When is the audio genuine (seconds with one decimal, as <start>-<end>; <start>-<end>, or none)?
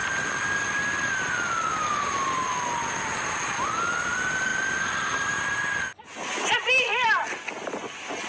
0.0-6.9; 7.5-8.3